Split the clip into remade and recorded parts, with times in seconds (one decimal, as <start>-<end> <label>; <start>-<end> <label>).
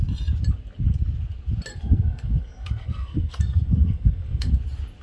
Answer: 0.0-1.7 recorded; 1.7-4.5 remade; 4.5-5.0 recorded